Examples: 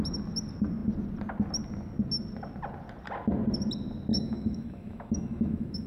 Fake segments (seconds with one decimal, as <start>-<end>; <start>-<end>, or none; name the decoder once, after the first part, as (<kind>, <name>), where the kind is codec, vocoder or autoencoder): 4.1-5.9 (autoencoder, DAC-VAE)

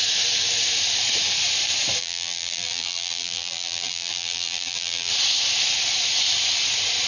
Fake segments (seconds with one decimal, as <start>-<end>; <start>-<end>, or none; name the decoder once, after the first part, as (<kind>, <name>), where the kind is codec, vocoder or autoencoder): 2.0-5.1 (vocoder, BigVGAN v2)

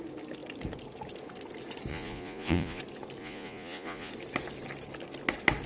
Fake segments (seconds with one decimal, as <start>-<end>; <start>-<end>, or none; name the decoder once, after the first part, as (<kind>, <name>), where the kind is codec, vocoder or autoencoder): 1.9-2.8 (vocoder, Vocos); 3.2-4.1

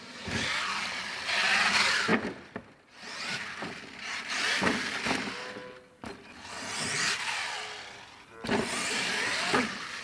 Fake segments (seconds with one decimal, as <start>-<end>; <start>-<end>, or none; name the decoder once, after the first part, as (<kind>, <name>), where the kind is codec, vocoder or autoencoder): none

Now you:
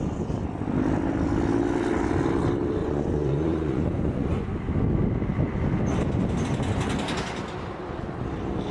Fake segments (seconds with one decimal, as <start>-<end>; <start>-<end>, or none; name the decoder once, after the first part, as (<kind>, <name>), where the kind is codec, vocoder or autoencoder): 2.8-4.5 (vocoder, Vocos)

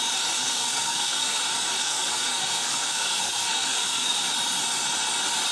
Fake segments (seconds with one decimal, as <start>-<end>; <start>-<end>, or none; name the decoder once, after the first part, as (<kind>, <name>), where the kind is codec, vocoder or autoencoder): 0.4-1.4 (codec, SNAC); 1.8-4.3

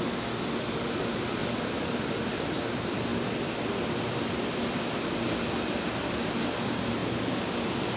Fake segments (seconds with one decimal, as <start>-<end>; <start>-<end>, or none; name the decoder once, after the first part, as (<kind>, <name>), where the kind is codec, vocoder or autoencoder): 1.4-2.6 (vocoder, BigVGAN v2)